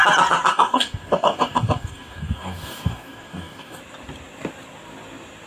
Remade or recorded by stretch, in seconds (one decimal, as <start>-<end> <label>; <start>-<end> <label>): 0.0-0.5 recorded; 0.5-3.8 remade; 3.8-5.5 recorded